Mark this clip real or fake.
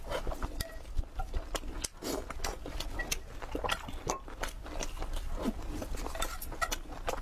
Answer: real